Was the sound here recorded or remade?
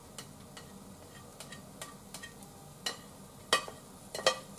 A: recorded